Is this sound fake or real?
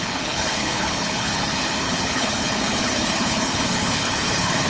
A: fake